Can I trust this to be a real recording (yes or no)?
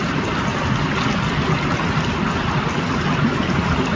yes